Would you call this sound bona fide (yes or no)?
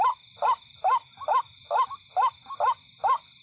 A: yes